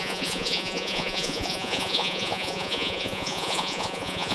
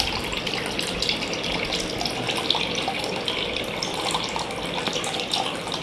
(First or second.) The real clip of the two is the second